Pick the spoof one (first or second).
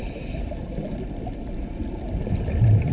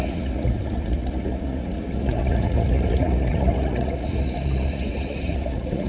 second